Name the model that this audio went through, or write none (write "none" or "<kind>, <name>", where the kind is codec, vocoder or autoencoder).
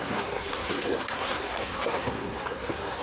codec, SNAC